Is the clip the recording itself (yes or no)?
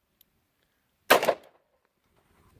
yes